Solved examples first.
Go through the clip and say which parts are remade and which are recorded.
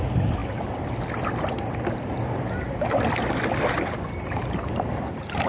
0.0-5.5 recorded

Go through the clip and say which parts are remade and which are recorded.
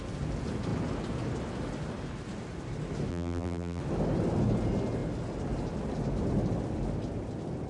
0.0-3.1 recorded; 3.1-3.8 remade; 3.8-7.7 recorded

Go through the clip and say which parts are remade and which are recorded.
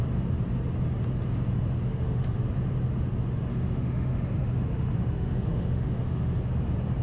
0.0-1.9 recorded; 1.9-2.4 remade; 2.4-3.5 recorded; 3.5-6.4 remade; 6.4-7.0 recorded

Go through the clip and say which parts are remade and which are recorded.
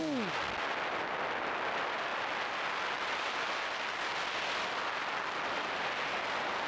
0.0-6.7 recorded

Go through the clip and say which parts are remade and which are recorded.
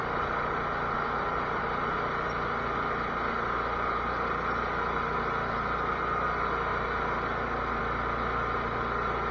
0.0-9.3 recorded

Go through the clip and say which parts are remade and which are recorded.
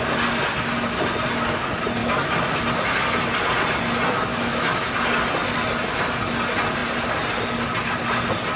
0.0-2.0 recorded; 2.0-2.6 remade; 2.6-4.3 recorded; 4.3-4.9 remade; 4.9-8.6 recorded